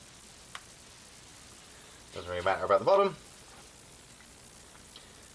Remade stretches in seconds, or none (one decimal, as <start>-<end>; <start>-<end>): none